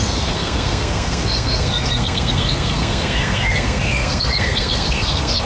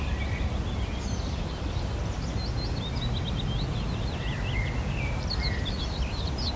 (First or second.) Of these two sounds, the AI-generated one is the first